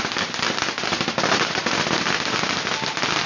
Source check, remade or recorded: recorded